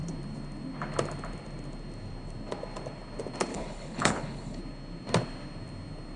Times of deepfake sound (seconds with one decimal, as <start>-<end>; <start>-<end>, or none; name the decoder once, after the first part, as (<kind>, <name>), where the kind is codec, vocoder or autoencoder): 3.5-4.6 (codec, HILCodec)

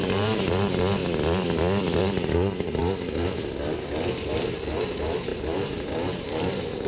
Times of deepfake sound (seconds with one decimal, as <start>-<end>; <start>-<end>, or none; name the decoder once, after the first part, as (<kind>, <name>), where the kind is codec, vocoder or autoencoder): 0.0-1.0 (vocoder, BigVGAN v2); 2.0-2.8; 4.1-6.9

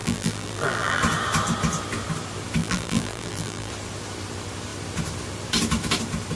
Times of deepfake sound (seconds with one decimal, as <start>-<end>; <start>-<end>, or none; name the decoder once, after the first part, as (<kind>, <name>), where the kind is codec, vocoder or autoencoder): 0.0-1.0 (vocoder, BigVGAN v2); 2.6-3.7